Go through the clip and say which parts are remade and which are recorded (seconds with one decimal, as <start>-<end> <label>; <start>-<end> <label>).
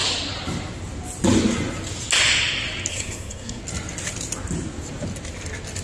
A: 0.0-2.9 recorded; 2.9-3.6 remade; 3.6-5.8 recorded